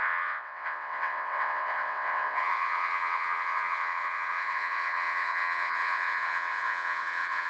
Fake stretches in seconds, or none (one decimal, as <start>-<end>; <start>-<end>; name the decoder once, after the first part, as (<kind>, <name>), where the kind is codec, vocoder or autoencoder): 0.0-7.5 (vocoder, WaveNeXt)